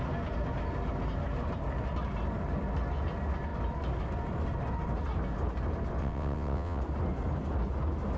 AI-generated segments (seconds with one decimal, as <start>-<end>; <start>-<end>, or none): 6.0-6.8